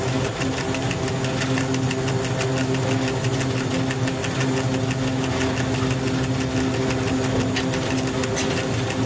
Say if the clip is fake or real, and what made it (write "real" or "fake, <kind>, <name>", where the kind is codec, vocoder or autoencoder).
real